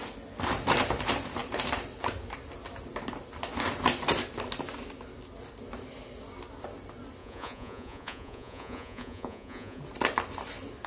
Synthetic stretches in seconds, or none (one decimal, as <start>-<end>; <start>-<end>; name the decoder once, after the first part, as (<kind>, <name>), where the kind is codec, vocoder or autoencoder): 7.2-9.8 (vocoder, Vocos)